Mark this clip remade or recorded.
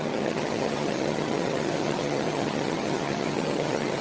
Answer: remade